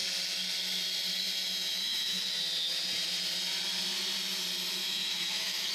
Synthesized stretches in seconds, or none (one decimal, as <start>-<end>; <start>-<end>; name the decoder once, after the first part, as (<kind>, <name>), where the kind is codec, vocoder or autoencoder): 1.8-2.4 (autoencoder, DAC-VAE); 4.8-5.7